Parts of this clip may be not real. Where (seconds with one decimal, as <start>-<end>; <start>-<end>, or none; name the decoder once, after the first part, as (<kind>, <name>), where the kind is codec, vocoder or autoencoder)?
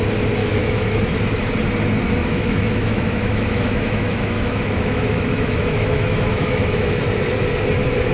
0.4-1.0 (autoencoder, DAC-VAE); 2.2-7.0